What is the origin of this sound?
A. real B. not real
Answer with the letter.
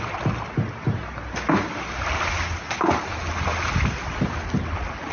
A